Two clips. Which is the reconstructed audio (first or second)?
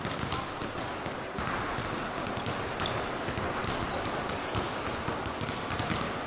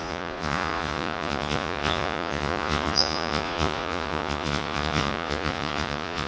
second